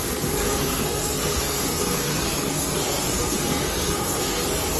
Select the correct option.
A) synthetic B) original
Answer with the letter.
A